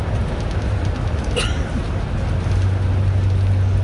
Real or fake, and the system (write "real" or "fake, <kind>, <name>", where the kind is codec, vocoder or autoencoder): real